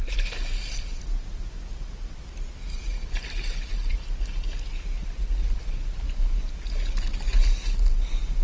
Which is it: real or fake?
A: real